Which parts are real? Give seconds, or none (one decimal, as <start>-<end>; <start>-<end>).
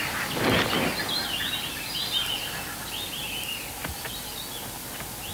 0.0-5.3